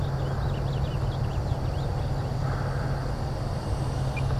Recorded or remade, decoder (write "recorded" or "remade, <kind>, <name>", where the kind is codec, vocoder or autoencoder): recorded